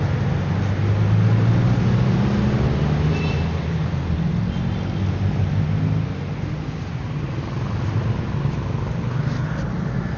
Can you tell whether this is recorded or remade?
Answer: recorded